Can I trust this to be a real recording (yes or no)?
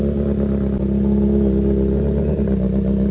yes